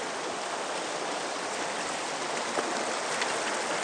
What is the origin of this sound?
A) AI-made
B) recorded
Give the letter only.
B